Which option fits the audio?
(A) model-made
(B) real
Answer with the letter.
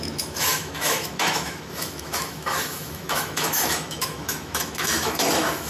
A